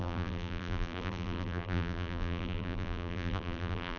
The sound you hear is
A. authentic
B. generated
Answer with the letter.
B